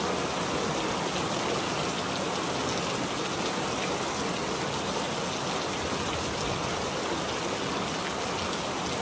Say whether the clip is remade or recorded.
recorded